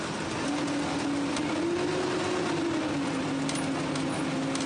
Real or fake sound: real